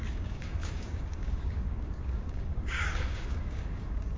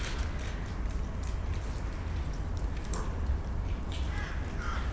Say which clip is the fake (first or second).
first